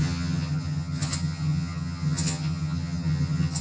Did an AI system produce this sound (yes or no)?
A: yes